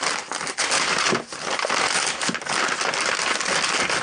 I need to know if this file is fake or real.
real